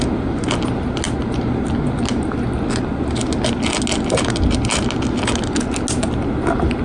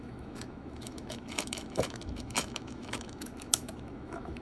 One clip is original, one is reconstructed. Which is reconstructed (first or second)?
second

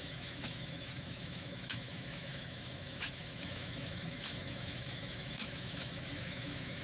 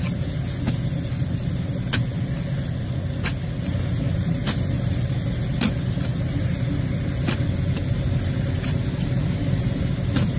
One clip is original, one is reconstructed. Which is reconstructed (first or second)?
first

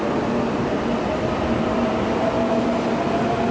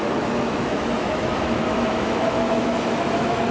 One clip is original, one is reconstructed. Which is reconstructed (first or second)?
second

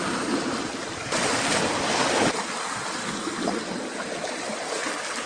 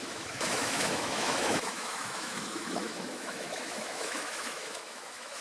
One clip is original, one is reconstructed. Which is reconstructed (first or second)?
second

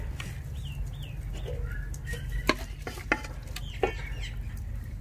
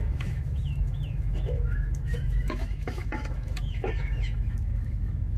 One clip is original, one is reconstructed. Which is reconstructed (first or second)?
second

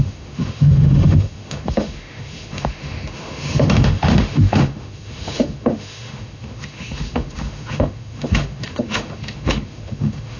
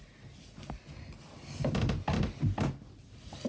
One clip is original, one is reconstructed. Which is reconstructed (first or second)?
first